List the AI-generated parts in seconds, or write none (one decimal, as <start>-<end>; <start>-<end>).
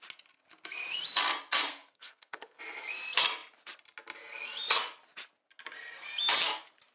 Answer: 1.7-2.6